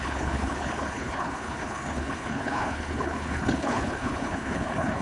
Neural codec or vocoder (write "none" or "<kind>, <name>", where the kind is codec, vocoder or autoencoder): codec, HILCodec